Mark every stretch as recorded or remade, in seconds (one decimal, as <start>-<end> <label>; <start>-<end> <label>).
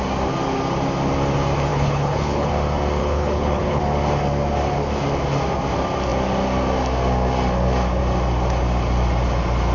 0.0-1.7 recorded; 1.7-2.5 remade; 2.5-3.0 recorded; 3.0-3.8 remade; 3.8-9.7 recorded